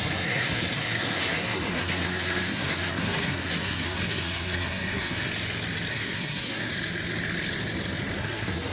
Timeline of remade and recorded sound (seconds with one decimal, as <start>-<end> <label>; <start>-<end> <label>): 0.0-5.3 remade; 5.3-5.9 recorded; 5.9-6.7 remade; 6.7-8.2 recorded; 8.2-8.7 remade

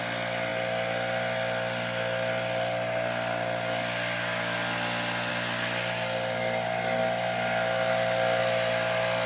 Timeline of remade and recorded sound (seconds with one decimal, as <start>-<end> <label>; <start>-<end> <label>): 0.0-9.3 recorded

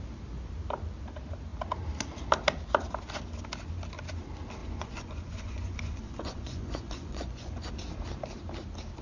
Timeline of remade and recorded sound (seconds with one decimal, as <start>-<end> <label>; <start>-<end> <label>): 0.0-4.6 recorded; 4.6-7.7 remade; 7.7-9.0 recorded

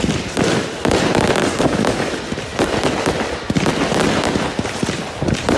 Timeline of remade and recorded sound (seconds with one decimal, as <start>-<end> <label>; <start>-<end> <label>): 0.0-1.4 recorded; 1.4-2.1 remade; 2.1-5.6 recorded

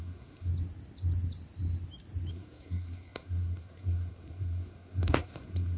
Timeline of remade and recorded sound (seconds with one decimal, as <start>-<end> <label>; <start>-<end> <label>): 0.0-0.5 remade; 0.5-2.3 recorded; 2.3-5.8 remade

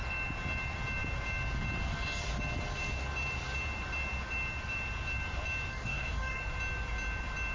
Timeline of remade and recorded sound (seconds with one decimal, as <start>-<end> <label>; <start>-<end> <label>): 0.0-5.7 recorded; 5.7-6.4 remade; 6.4-7.5 recorded